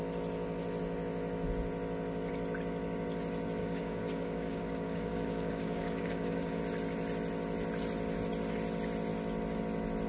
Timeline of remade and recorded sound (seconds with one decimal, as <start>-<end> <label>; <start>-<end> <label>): 0.0-3.6 recorded; 3.6-6.6 remade; 6.6-10.1 recorded